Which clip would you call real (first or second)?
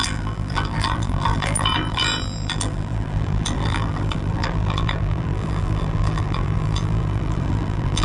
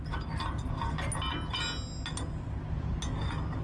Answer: second